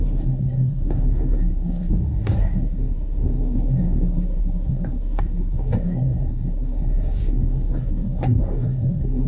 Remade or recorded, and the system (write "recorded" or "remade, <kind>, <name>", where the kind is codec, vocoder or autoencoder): remade, codec, SNAC